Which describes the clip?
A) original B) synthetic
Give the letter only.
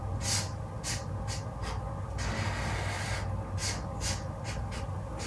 A